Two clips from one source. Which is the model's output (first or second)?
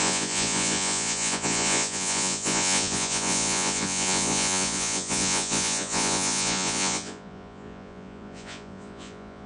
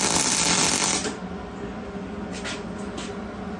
first